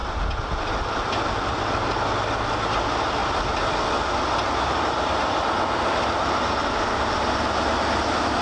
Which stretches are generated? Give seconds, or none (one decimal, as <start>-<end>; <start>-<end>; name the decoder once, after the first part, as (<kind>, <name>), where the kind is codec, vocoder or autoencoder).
none